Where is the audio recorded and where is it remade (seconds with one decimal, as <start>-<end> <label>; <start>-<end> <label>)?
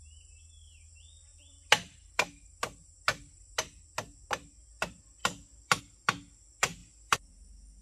0.0-6.8 recorded; 6.8-7.3 remade; 7.3-7.8 recorded